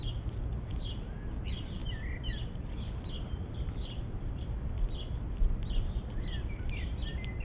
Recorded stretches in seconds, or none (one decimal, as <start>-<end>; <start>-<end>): 0.0-7.4